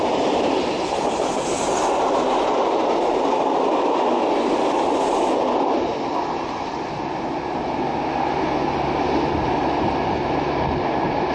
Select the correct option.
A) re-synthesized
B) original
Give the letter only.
B